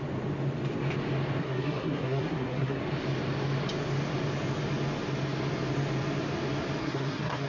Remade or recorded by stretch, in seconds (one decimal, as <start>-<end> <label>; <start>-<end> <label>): 0.0-1.4 recorded; 1.4-2.8 remade; 2.8-6.8 recorded; 6.8-7.5 remade